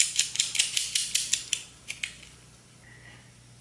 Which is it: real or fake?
real